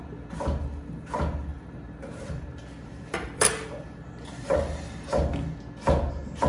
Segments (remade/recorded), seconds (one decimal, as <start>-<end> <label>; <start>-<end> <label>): 0.0-1.5 recorded; 1.5-5.3 remade; 5.3-6.5 recorded